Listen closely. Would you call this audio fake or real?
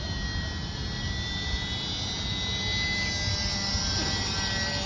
real